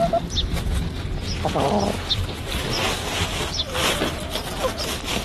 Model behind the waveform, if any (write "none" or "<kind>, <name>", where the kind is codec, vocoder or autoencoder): none